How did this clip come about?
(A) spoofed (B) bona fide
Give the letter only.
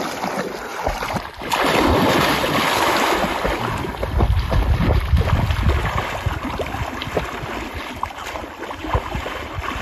B